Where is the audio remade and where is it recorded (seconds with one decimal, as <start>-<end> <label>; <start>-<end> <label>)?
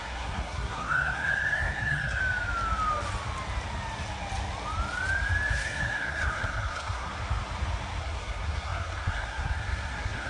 0.0-2.2 remade; 2.2-5.5 recorded; 5.5-7.1 remade; 7.1-8.0 recorded; 8.0-10.3 remade